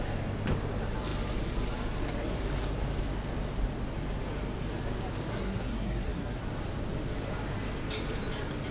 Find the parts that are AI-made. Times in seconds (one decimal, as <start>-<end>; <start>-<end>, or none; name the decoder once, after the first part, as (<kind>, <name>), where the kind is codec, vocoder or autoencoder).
5.3-6.4 (codec, SNAC)

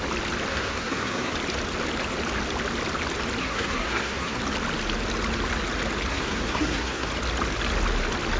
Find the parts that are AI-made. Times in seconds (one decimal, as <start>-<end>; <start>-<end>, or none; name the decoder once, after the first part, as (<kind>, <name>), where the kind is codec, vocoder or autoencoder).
0.5-1.3 (codec, SNAC); 3.4-4.4; 6.1-7.1

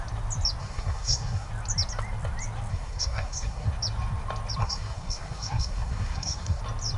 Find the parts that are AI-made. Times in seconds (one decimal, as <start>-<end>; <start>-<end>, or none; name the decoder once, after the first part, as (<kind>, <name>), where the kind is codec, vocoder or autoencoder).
0.6-1.5 (codec, SNAC); 2.7-3.7; 4.6-6.6